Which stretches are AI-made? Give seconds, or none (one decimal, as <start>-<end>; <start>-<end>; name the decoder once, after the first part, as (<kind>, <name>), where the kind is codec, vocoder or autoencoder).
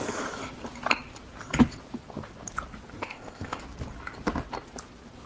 3.0-3.6 (codec, ZipCodec)